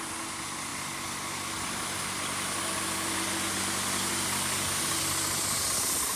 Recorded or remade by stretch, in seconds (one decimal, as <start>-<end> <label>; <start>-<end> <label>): 0.0-6.2 recorded